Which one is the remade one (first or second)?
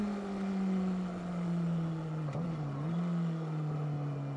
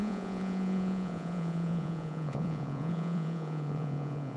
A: second